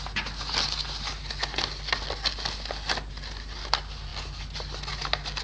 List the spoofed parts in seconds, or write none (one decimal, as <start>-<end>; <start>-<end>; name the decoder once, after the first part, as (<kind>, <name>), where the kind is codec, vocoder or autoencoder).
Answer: none